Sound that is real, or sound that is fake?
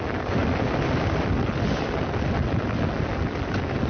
real